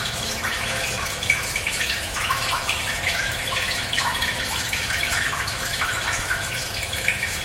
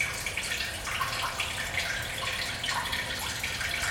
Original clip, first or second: second